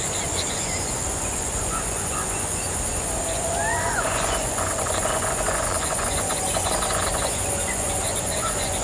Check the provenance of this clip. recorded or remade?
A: remade